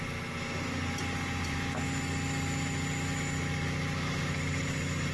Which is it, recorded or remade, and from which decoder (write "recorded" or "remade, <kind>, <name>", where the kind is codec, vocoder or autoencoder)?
recorded